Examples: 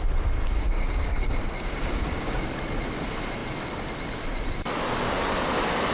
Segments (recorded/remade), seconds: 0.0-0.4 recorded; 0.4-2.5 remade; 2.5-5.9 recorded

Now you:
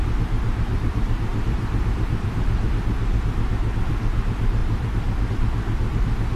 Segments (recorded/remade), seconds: 0.0-1.3 recorded; 1.3-2.6 remade; 2.6-4.6 recorded; 4.6-5.3 remade; 5.3-6.4 recorded

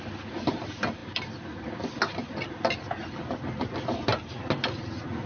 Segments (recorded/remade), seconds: 0.0-5.3 recorded

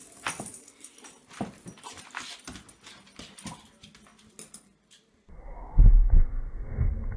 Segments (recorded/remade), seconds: 0.0-7.2 recorded

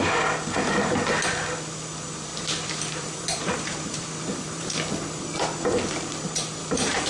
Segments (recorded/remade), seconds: 0.0-2.3 recorded; 2.3-4.7 remade; 4.7-6.6 recorded; 6.6-7.1 remade